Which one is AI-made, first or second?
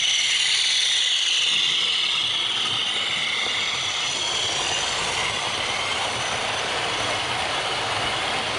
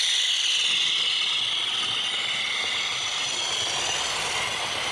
first